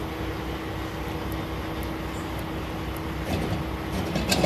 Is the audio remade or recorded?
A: recorded